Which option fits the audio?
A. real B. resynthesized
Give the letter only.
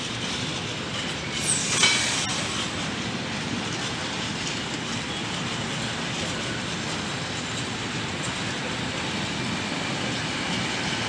A